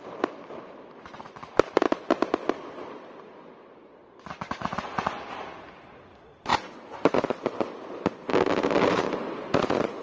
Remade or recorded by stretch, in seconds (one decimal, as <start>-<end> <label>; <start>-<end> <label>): 0.0-6.5 recorded; 6.5-8.3 remade; 8.3-10.0 recorded